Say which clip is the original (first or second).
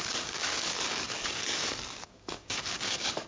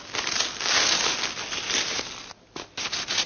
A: second